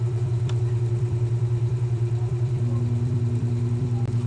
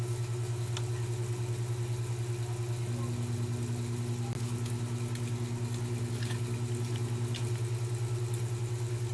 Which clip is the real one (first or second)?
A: second